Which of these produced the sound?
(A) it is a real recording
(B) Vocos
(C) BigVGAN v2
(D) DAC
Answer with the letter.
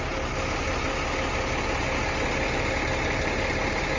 A